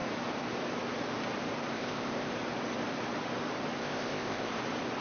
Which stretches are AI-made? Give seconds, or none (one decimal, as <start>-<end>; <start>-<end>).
1.7-2.3; 3.8-4.5